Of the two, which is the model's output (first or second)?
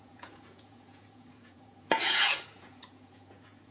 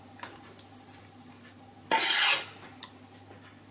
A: first